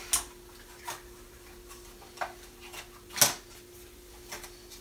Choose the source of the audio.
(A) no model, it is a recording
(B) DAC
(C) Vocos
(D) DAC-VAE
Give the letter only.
A